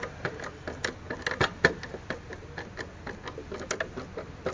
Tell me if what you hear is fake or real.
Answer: real